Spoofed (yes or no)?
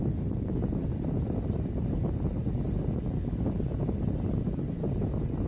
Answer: no